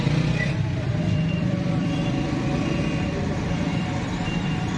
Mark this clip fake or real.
fake